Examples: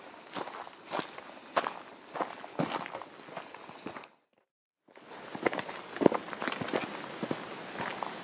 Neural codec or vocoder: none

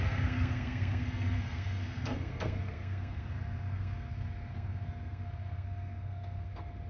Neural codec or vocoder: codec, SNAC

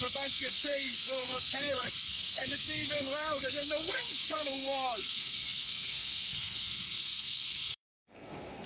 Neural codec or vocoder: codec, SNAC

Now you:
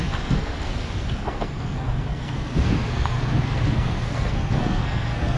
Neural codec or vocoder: codec, SNAC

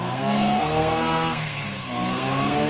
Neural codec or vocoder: codec, SNAC